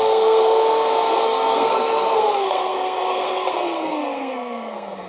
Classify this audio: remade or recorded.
remade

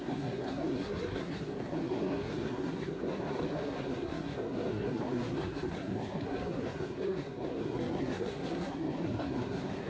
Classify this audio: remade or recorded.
remade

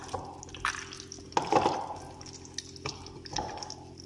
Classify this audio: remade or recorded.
recorded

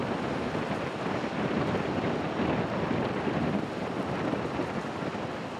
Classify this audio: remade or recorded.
recorded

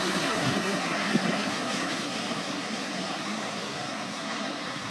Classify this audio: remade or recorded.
remade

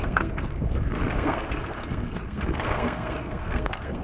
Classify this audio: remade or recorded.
remade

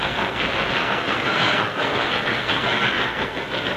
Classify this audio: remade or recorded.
remade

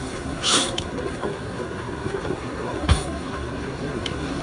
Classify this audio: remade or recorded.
remade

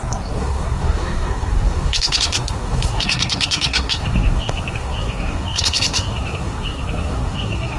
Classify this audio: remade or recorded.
remade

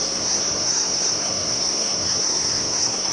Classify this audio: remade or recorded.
remade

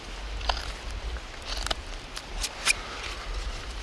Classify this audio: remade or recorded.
recorded